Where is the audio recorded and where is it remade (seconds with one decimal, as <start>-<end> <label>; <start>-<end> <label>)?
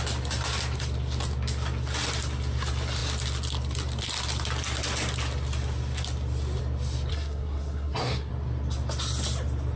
0.0-7.1 recorded; 7.1-8.3 remade; 8.3-9.8 recorded